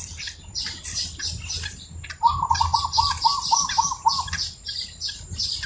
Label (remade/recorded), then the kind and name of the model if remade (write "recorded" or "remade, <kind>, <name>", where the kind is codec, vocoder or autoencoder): recorded